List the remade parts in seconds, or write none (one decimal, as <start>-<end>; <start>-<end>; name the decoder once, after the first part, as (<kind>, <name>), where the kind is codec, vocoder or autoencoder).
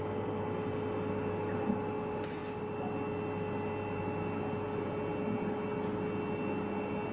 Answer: none